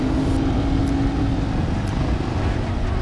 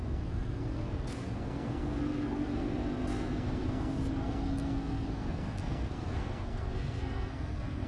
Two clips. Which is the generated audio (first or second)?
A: second